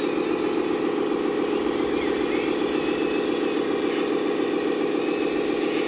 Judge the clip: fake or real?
real